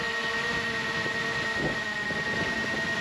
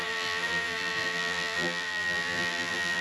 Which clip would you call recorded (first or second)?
first